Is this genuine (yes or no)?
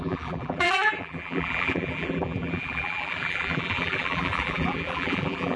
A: no